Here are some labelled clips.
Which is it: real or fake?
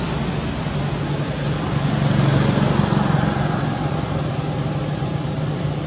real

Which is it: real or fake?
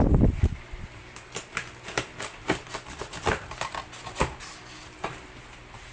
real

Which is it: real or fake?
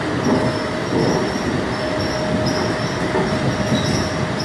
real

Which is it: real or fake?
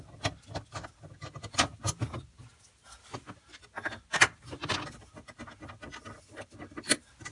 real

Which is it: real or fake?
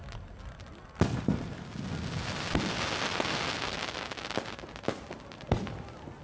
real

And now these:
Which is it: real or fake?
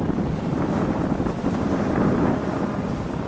real